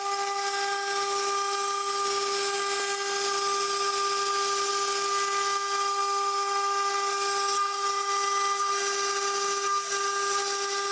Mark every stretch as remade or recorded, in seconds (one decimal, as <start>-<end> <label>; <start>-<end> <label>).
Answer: 0.0-10.9 recorded